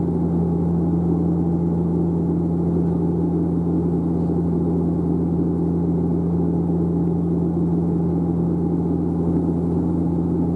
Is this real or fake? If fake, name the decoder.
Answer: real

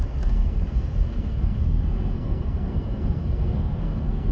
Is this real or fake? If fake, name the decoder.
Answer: fake, codec, SNAC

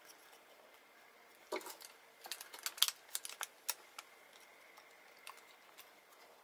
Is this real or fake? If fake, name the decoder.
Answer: real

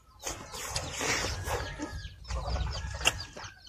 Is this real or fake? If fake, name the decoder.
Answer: real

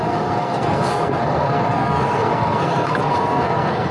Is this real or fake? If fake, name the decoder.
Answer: fake, codec, SNAC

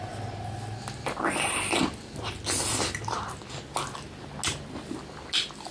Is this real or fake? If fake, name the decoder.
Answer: real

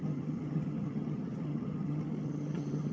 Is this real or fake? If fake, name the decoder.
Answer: fake, vocoder, HiFi-GAN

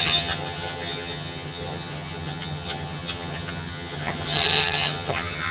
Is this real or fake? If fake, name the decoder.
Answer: fake, vocoder, HiFi-GAN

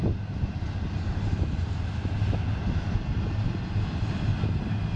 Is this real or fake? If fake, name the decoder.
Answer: real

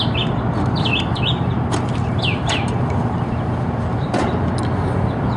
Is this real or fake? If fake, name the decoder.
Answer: real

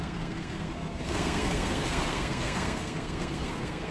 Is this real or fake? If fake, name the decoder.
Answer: fake, codec, SNAC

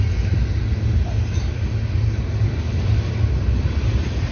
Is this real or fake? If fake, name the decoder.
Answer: fake, vocoder, BigVGAN v2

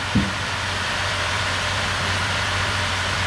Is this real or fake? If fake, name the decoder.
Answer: fake, vocoder, BigVGAN v2